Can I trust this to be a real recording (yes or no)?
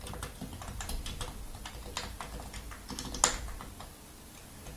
yes